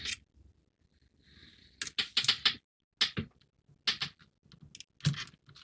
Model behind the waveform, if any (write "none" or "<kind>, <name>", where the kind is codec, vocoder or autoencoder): none